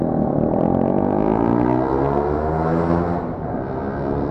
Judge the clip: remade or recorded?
recorded